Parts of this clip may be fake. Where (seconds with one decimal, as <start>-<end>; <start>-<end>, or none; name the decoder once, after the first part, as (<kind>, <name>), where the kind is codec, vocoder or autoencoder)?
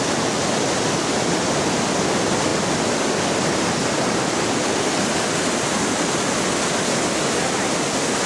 none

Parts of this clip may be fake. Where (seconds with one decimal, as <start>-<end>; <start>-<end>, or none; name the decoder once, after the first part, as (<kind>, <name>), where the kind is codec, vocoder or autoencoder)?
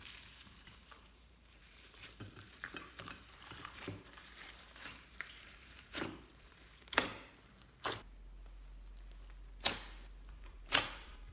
0.0-7.1 (vocoder, BigVGAN v2); 10.3-11.3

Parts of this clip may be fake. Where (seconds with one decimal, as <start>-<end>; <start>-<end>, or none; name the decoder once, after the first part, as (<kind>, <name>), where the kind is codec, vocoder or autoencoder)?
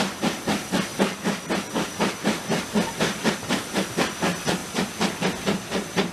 0.9-3.9 (vocoder, BigVGAN v2); 4.6-5.2